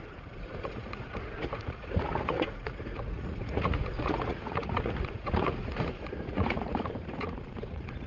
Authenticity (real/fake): fake